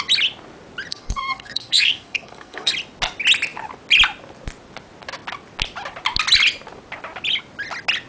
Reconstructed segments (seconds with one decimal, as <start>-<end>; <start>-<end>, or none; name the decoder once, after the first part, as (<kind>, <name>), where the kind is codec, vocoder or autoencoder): 0.9-2.7 (codec, SNAC)